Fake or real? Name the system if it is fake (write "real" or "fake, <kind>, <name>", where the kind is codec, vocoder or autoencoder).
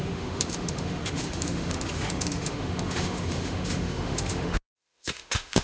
fake, autoencoder, DAC-VAE